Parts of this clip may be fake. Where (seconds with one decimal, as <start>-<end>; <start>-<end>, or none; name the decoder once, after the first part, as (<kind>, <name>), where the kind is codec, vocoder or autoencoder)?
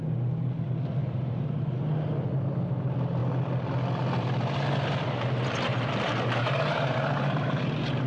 1.0-1.6 (vocoder, BigVGAN v2); 5.7-7.6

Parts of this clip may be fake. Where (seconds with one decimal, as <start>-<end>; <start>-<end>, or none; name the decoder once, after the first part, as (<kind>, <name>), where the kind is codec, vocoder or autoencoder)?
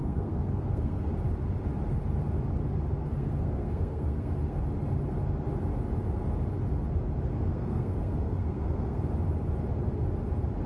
0.0-1.1 (codec, SNAC); 3.0-4.6; 7.5-9.0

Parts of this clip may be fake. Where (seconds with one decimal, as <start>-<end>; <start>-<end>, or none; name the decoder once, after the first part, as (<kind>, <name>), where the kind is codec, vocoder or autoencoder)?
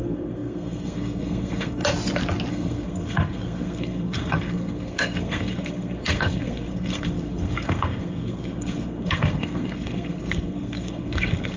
0.0-1.8 (codec, SNAC); 2.5-11.6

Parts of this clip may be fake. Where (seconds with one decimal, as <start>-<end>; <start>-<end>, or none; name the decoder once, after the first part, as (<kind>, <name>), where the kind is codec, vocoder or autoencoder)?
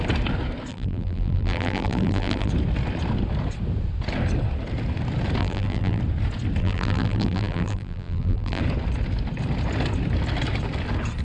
0.7-2.5 (vocoder, BigVGAN v2); 5.4-6.0; 6.6-8.6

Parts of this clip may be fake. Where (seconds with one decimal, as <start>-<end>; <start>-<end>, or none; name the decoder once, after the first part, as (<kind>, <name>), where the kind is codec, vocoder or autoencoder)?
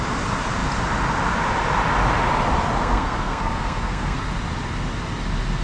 2.8-4.2 (codec, SNAC)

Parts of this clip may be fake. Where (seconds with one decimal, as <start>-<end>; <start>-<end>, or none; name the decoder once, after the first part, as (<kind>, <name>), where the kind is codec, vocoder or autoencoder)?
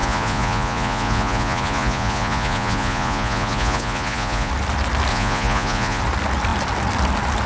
0.0-4.5 (vocoder, Vocos); 5.1-6.0